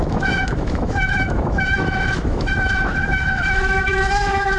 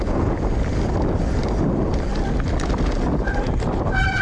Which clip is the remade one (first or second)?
first